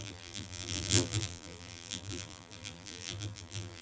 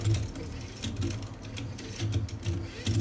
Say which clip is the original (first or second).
second